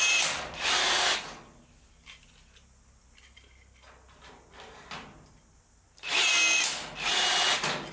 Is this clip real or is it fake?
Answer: real